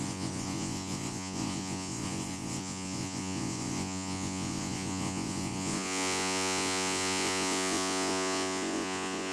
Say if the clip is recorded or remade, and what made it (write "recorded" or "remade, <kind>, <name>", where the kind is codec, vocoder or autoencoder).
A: remade, vocoder, Vocos